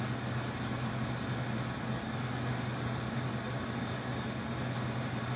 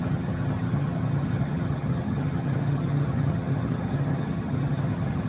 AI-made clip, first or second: second